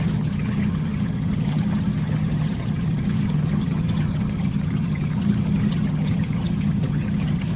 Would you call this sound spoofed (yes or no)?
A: yes